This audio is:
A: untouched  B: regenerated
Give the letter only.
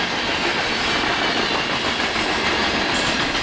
A